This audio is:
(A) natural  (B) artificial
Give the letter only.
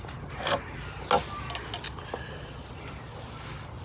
A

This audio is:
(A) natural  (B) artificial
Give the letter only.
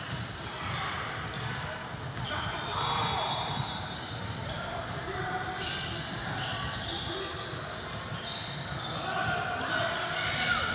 A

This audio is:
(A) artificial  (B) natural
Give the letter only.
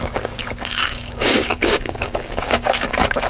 A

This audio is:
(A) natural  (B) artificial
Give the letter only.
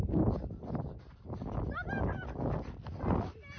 A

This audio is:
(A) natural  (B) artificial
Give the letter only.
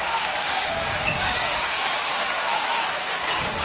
B